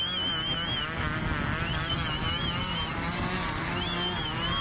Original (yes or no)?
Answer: yes